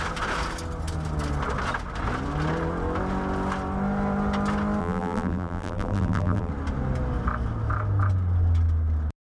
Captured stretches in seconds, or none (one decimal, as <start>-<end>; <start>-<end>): 0.0-4.8; 6.5-9.3